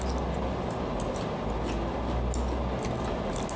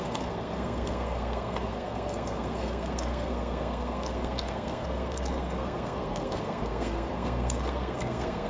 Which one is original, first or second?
first